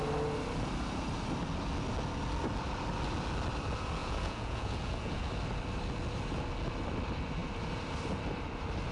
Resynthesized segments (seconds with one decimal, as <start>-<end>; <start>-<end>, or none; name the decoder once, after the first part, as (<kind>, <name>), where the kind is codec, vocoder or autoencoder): 4.0-5.3 (vocoder, Vocos)